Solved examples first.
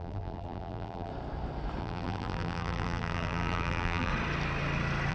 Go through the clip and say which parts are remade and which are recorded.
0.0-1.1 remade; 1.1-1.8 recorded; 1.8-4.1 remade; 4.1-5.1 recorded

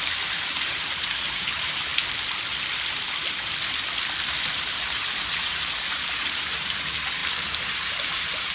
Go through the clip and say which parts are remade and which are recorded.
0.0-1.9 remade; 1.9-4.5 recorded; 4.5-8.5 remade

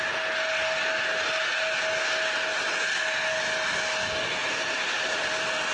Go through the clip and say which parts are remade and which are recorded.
0.0-4.4 recorded; 4.4-5.7 remade

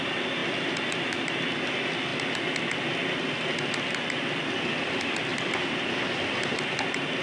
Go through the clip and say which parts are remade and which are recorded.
0.0-5.3 recorded; 5.3-5.9 remade; 5.9-7.2 recorded

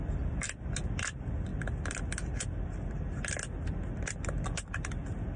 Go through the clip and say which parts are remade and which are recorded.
0.0-5.4 recorded

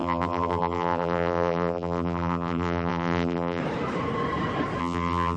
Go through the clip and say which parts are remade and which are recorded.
0.0-3.6 remade; 3.6-4.8 recorded; 4.8-5.4 remade

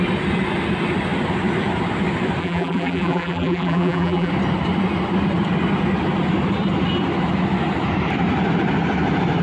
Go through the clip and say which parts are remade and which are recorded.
0.0-2.4 recorded; 2.4-4.3 remade; 4.3-9.4 recorded

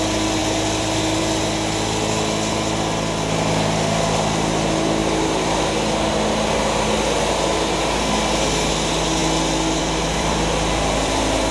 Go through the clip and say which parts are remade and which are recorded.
0.0-5.0 remade; 5.0-8.7 recorded; 8.7-9.2 remade; 9.2-9.8 recorded; 9.8-11.5 remade